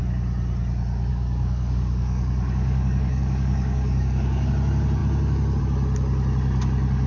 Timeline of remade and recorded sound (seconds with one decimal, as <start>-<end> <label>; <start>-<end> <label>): 0.0-1.1 recorded; 1.1-4.5 remade; 4.5-7.1 recorded